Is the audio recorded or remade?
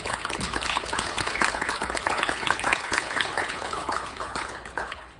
remade